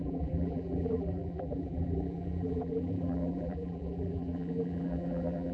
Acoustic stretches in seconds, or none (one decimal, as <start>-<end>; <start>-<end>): none